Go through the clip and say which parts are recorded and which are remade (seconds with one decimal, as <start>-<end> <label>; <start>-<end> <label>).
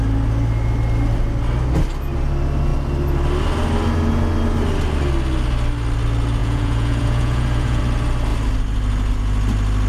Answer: 0.0-6.4 recorded; 6.4-7.8 remade; 7.8-9.9 recorded